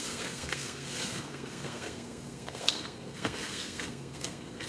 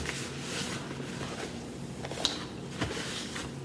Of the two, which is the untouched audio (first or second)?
second